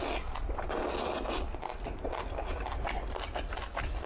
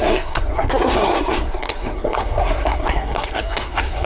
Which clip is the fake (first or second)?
second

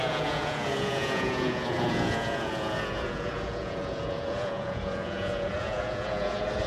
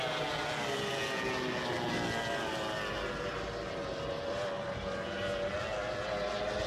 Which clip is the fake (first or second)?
first